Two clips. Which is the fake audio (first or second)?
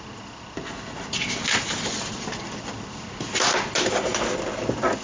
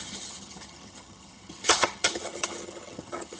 second